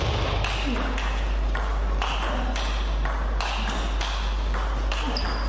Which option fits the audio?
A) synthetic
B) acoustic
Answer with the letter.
B